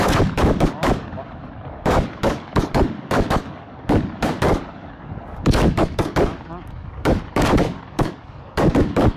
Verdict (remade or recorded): remade